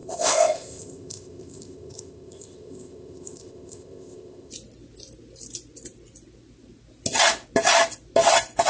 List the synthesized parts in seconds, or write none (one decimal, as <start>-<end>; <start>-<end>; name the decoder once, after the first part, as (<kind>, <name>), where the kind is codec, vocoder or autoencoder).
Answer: 0.0-4.5 (codec, ZipCodec)

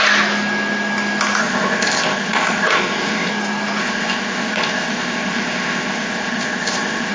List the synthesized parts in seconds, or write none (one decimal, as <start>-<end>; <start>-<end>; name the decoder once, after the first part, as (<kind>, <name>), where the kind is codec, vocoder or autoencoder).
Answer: 1.4-3.3 (codec, ZipCodec); 3.8-7.1